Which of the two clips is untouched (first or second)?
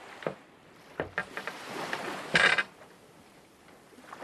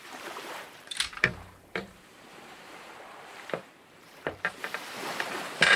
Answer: first